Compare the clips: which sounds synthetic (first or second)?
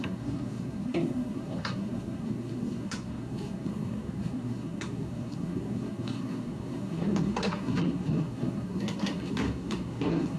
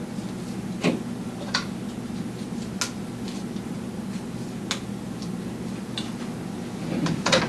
first